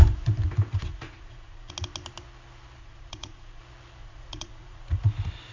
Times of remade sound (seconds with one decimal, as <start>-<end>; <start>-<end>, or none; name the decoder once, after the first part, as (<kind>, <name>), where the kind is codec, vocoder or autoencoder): 0.9-1.7 (vocoder, Vocos); 2.8-3.6; 4.0-5.0